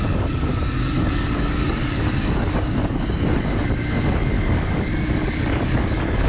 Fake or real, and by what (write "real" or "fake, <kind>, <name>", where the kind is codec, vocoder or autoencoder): fake, codec, DAC